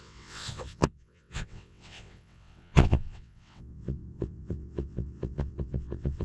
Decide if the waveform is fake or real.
fake